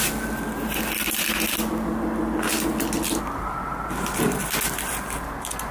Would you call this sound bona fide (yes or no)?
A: yes